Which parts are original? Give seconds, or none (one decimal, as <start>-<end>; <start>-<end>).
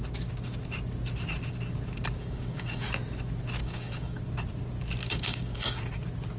0.0-2.2; 2.9-3.6; 4.2-5.0; 5.8-6.4